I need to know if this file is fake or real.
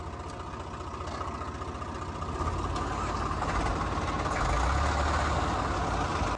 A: real